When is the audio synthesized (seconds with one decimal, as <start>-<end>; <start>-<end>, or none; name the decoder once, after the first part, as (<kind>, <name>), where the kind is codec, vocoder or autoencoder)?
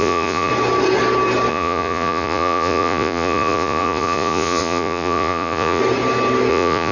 0.0-0.5 (vocoder, Vocos); 1.5-5.8; 6.5-6.9